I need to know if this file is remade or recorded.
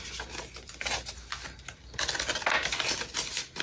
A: recorded